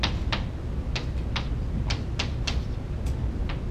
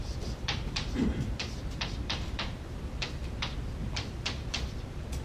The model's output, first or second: second